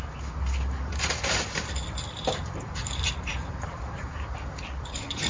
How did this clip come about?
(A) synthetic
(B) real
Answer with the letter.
A